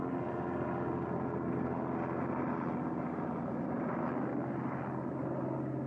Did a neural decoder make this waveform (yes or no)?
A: no